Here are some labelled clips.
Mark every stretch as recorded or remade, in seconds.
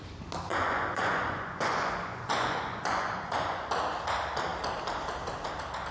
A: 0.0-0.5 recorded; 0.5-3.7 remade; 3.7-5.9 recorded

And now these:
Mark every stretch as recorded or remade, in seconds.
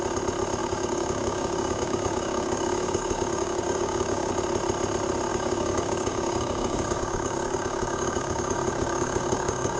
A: 0.0-0.6 recorded; 0.6-4.3 remade; 4.3-5.3 recorded; 5.3-9.8 remade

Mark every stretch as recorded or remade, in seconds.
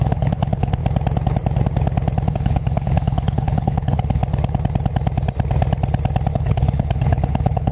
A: 0.0-0.8 remade; 0.8-2.3 recorded; 2.3-4.2 remade; 4.2-6.3 recorded; 6.3-7.7 remade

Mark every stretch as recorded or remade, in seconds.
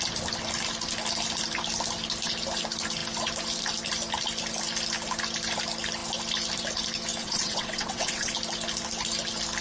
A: 0.0-7.2 recorded; 7.2-8.3 remade; 8.3-9.6 recorded